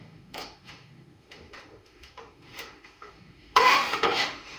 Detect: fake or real fake